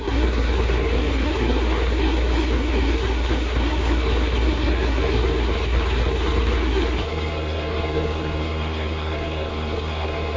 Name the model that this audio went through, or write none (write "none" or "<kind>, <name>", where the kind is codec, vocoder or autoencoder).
codec, SNAC